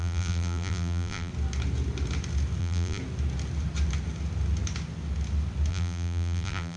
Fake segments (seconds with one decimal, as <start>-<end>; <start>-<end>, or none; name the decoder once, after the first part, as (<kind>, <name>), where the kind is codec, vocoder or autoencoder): 0.0-1.3 (vocoder, BigVGAN v2); 2.6-3.0; 5.7-6.8